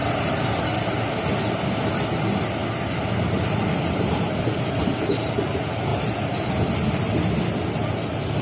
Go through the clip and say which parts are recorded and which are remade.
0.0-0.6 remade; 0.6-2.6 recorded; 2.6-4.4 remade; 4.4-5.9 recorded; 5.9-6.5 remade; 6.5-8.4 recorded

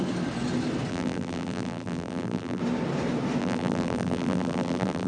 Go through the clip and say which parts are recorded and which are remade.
0.0-0.9 recorded; 0.9-2.6 remade; 2.6-3.4 recorded; 3.4-5.1 remade

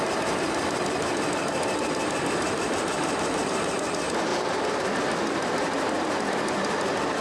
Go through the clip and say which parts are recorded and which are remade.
0.0-0.6 recorded; 0.6-3.7 remade; 3.7-4.3 recorded; 4.3-6.3 remade; 6.3-7.2 recorded

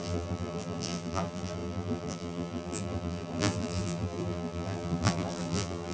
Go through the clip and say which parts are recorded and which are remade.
0.0-5.9 remade